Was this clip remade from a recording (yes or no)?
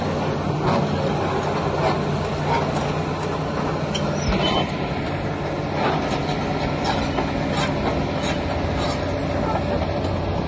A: no